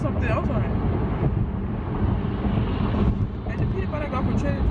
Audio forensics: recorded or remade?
recorded